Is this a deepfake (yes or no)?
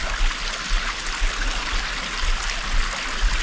no